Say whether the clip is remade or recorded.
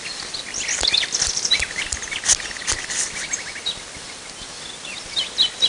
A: recorded